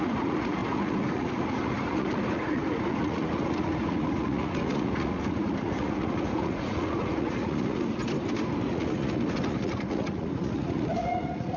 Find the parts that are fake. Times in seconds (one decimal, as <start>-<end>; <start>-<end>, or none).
0.0-8.0; 8.7-11.6